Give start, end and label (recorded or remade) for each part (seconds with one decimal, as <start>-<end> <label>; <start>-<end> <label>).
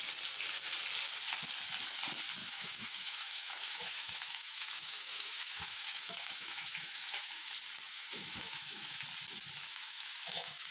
0.0-2.4 recorded; 2.4-7.5 remade; 7.5-7.9 recorded; 7.9-9.0 remade; 9.0-9.7 recorded; 9.7-10.7 remade